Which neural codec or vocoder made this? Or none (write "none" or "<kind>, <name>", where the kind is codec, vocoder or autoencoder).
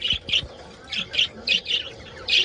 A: none